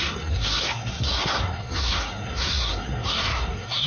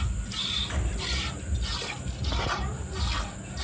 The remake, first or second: first